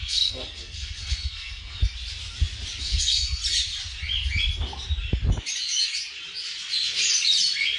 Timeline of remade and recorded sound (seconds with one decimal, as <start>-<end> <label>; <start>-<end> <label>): 0.0-1.8 remade; 1.8-2.8 recorded; 2.8-3.4 remade; 3.4-7.8 recorded